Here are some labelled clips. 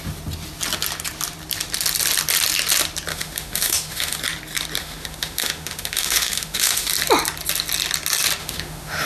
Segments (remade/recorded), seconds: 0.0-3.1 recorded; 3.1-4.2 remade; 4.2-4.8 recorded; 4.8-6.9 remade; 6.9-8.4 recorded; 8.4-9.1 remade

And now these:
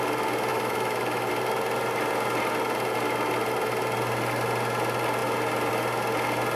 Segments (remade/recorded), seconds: 0.0-0.5 recorded; 0.5-1.3 remade; 1.3-6.6 recorded

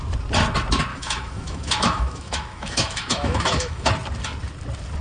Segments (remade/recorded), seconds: 0.0-0.9 recorded; 0.9-3.9 remade; 3.9-5.0 recorded

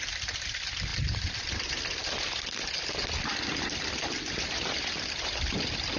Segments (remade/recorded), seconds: 0.0-6.0 recorded

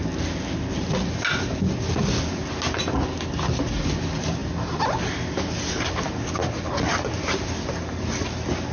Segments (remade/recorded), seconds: 0.0-8.7 recorded

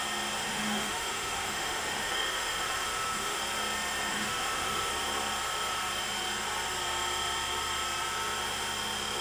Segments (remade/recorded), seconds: 0.0-0.4 recorded; 0.4-3.4 remade; 3.4-4.1 recorded; 4.1-4.9 remade; 4.9-9.2 recorded

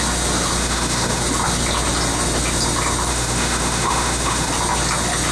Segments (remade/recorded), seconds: 0.0-0.6 recorded; 0.6-1.2 remade; 1.2-3.1 recorded; 3.1-4.5 remade; 4.5-5.3 recorded

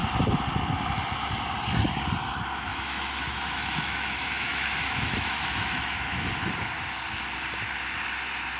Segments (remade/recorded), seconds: 0.0-2.7 recorded; 2.7-6.5 remade; 6.5-8.6 recorded